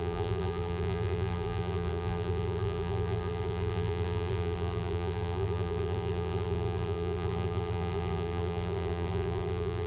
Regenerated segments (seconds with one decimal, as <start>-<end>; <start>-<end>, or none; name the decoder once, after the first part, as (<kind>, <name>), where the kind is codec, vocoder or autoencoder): 0.0-9.9 (vocoder, BigVGAN v2)